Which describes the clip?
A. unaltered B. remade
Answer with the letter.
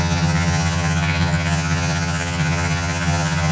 B